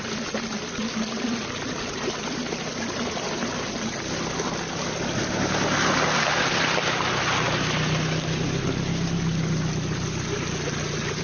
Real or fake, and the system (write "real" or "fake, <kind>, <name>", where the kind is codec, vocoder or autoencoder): real